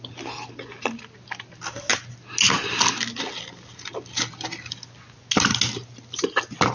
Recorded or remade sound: recorded